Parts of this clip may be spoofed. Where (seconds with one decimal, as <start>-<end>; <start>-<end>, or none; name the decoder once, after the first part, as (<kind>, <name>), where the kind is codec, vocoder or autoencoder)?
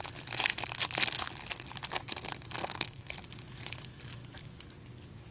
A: 2.6-3.1 (codec, SNAC)